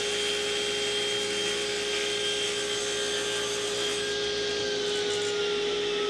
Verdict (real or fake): real